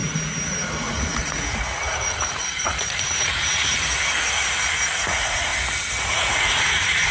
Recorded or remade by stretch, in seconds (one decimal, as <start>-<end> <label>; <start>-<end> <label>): 0.0-0.9 recorded; 0.9-3.7 remade; 3.7-4.9 recorded; 4.9-5.5 remade; 5.5-6.1 recorded; 6.1-7.1 remade